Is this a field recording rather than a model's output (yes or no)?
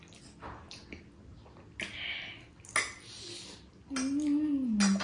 yes